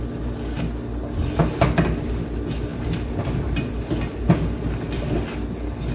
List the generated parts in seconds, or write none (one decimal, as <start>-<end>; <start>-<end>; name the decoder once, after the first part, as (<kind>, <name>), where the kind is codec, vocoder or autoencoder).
2.7-3.7 (vocoder, BigVGAN v2)